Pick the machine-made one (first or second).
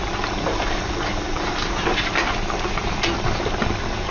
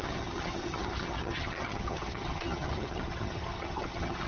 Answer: second